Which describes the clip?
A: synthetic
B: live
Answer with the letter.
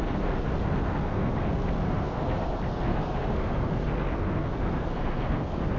A